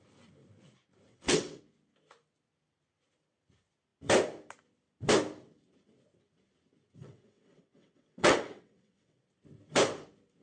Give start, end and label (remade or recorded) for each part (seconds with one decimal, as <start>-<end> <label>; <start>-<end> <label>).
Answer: 0.0-1.1 recorded; 1.1-1.6 remade; 1.6-7.0 recorded; 7.0-9.2 remade; 9.2-10.4 recorded